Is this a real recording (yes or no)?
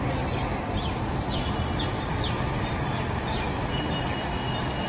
no